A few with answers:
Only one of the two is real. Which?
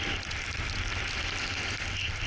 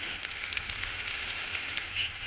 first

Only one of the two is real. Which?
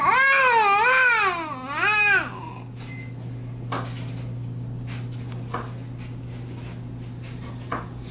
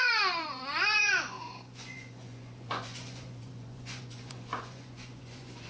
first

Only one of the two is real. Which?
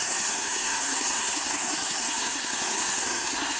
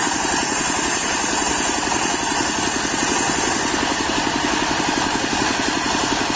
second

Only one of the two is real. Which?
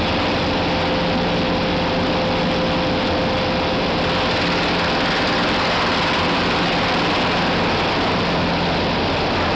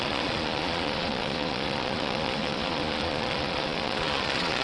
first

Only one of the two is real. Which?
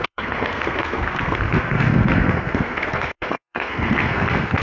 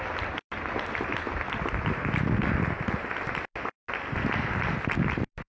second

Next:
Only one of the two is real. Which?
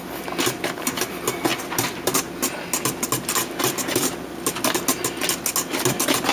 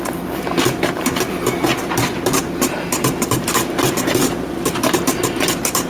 first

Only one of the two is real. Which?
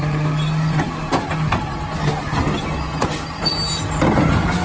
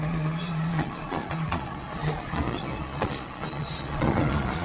first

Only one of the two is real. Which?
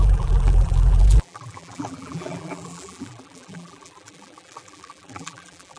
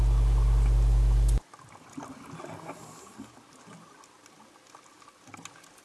second